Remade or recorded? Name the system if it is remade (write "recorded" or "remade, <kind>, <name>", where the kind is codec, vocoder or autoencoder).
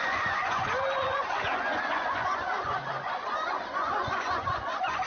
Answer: remade, vocoder, Vocos